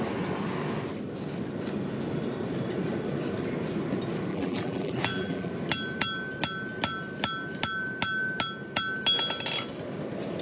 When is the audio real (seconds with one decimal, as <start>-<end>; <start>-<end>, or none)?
0.0-4.3; 5.5-10.4